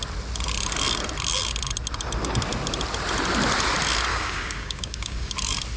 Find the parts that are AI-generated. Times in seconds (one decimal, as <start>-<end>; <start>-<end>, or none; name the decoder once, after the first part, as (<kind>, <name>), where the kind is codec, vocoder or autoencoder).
4.1-5.3 (codec, DAC)